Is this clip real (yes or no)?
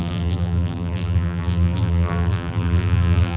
no